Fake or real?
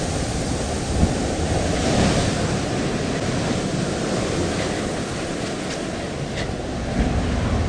real